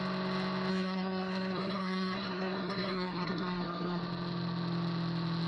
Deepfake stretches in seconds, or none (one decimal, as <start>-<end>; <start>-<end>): 0.7-4.0